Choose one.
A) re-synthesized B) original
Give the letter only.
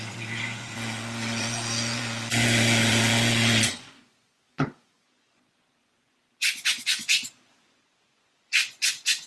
A